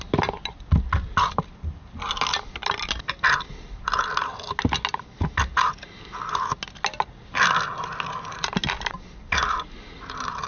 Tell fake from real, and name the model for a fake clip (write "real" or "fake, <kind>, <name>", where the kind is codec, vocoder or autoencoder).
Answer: real